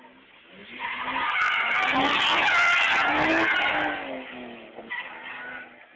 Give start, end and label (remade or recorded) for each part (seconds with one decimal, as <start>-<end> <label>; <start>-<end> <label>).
0.0-6.0 recorded